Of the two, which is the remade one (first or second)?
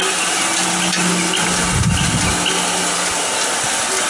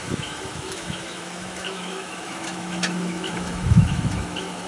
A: second